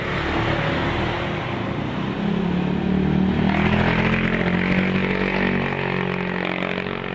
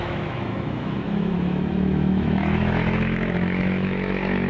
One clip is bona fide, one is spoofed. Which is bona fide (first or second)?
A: first